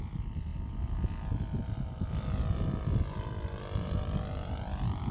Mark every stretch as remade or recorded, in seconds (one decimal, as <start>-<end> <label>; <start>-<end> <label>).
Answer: 0.0-5.1 recorded